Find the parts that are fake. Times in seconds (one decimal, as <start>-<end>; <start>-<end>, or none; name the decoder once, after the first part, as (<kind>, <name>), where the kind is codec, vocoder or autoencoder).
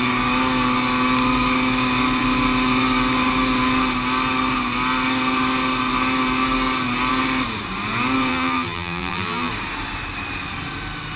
8.3-9.5 (vocoder, BigVGAN v2)